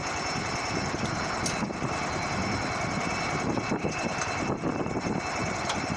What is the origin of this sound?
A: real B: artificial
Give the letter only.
A